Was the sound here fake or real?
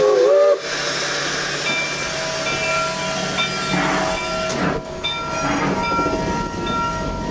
real